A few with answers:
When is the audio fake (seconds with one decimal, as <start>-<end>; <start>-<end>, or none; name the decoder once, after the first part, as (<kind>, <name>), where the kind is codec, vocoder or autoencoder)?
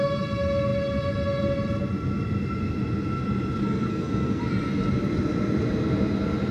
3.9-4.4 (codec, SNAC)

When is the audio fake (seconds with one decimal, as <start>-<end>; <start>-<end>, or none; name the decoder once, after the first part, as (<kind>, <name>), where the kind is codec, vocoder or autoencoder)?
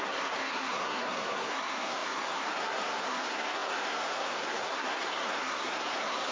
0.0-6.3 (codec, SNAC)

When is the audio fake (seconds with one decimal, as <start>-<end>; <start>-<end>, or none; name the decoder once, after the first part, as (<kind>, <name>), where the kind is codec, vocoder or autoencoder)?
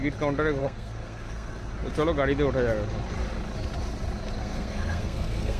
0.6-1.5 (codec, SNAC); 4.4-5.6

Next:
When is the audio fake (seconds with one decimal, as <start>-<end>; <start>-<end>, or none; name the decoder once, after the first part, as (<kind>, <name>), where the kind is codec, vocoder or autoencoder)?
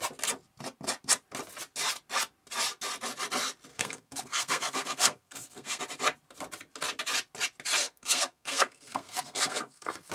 3.7-5.8 (codec, SNAC); 7.8-10.1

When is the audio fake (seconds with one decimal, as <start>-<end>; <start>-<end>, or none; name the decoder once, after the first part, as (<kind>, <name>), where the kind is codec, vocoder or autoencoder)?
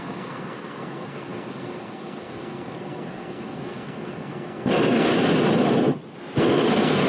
0.0-5.1 (codec, SNAC); 6.4-7.1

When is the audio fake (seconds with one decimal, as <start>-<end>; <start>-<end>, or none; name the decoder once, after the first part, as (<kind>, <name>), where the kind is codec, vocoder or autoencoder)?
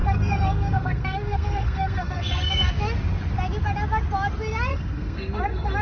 0.0-2.7 (codec, SNAC); 4.7-5.8